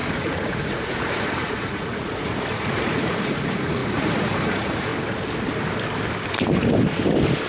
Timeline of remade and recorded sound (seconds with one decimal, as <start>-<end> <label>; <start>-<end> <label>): 0.0-4.9 remade; 4.9-7.5 recorded